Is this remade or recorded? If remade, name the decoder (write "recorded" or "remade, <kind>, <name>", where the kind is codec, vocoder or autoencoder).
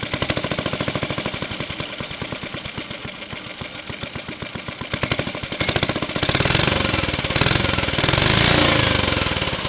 recorded